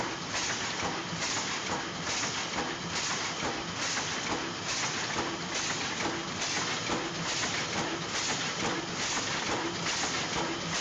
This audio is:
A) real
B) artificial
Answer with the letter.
A